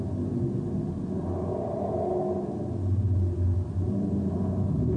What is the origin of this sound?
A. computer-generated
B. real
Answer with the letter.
B